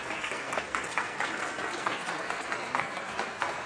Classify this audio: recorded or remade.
remade